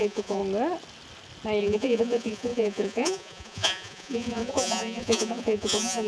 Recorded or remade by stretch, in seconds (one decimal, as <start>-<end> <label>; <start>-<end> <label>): 0.0-0.4 remade; 0.4-1.6 recorded; 1.6-6.1 remade